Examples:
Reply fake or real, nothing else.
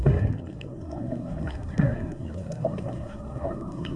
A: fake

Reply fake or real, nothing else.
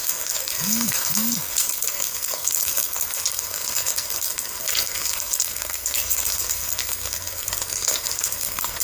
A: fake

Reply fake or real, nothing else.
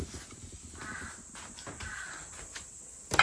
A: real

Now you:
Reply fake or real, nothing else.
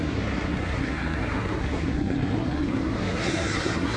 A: fake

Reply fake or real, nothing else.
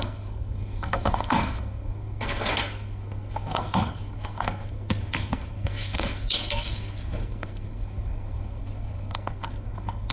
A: fake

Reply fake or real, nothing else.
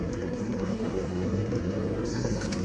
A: fake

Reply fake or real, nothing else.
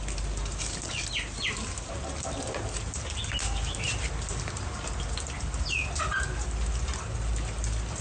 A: real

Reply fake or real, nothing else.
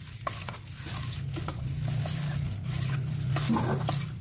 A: real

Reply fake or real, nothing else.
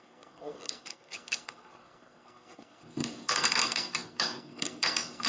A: fake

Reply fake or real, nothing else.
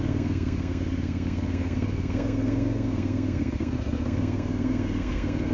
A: fake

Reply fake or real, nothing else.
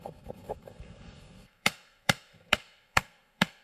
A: fake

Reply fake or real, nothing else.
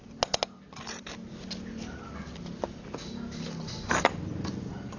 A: real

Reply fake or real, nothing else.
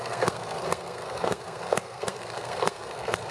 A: fake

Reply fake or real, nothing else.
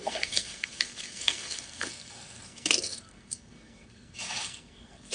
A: fake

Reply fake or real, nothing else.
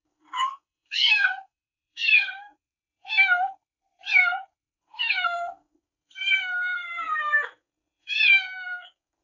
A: fake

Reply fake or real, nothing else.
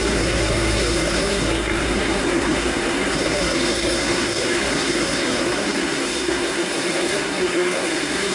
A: fake